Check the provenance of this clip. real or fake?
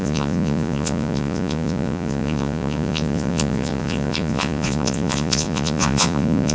fake